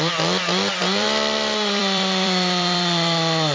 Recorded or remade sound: remade